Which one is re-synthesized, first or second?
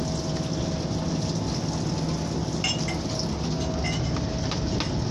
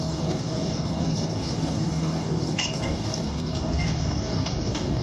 second